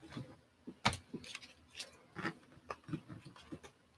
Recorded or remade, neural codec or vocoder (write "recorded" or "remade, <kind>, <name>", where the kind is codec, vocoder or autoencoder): recorded